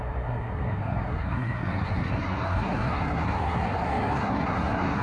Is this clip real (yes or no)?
no